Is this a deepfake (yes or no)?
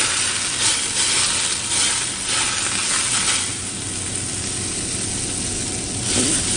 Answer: no